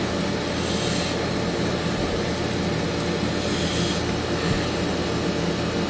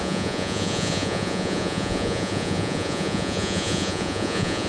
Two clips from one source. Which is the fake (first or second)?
second